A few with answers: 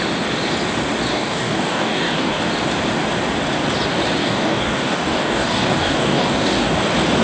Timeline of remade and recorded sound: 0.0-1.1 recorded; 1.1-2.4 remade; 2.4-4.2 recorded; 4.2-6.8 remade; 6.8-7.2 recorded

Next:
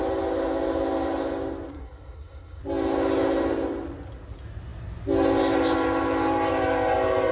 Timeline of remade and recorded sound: 0.0-1.7 recorded; 1.7-2.6 remade; 2.6-7.3 recorded

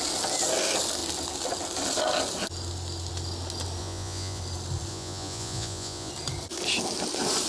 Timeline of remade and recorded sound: 0.0-3.8 recorded; 3.8-4.4 remade; 4.4-4.9 recorded; 4.9-6.1 remade; 6.1-7.5 recorded

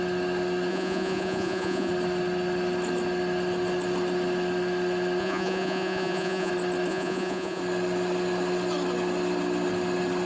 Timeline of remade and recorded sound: 0.0-0.7 recorded; 0.7-1.9 remade; 1.9-5.2 recorded; 5.2-6.5 remade; 6.5-6.9 recorded; 6.9-7.6 remade; 7.6-10.3 recorded

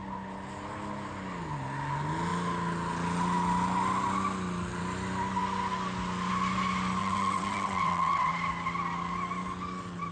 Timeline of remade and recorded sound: 0.0-7.0 recorded; 7.0-8.3 remade; 8.3-10.1 recorded

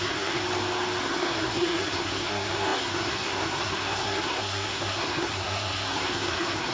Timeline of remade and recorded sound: 0.0-0.4 remade; 0.4-1.0 recorded; 1.0-6.7 remade

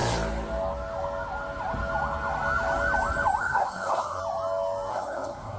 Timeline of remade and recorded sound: 0.0-3.4 recorded; 3.4-4.2 remade; 4.2-4.9 recorded; 4.9-5.6 remade